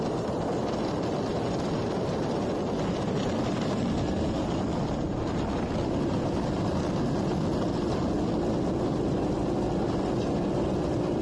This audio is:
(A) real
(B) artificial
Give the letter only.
A